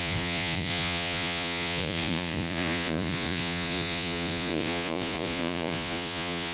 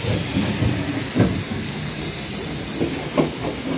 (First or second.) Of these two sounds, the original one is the second